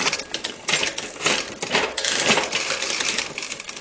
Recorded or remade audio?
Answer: remade